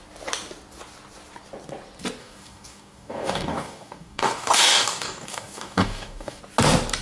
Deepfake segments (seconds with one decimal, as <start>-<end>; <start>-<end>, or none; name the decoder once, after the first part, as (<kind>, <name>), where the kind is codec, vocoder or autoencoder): 2.2-6.4 (codec, DAC)